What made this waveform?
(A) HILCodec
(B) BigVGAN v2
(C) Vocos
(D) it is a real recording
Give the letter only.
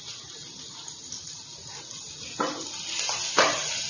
D